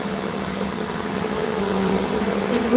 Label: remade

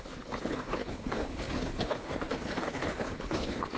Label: remade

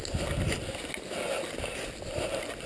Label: recorded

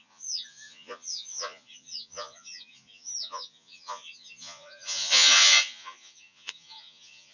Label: remade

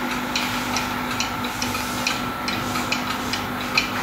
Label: recorded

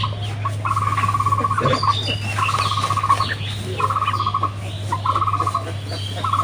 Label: recorded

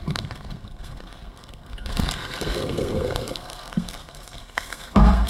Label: remade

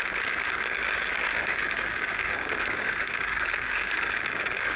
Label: remade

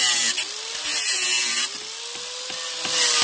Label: recorded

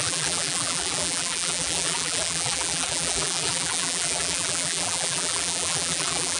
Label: remade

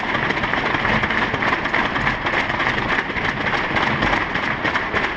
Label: recorded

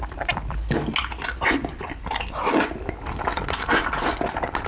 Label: recorded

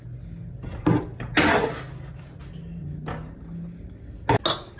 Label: recorded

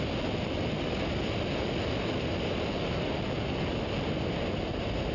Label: recorded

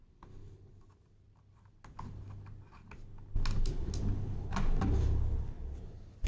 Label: recorded